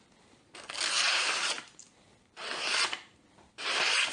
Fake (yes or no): yes